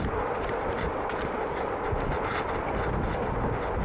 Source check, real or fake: real